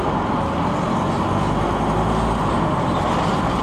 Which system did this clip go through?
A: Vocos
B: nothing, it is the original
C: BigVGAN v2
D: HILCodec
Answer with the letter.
B